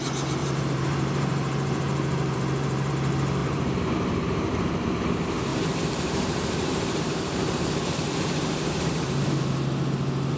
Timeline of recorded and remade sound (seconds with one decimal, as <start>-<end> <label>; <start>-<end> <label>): 0.0-0.4 recorded; 0.4-2.9 remade; 2.9-3.4 recorded; 3.4-5.0 remade; 5.0-5.5 recorded; 5.5-9.2 remade; 9.2-10.4 recorded